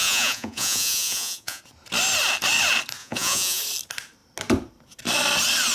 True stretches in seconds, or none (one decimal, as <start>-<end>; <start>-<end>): 1.6-3.0; 3.6-5.7